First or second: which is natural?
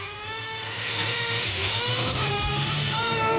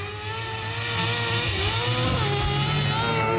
second